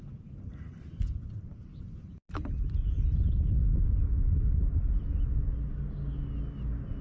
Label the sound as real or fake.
real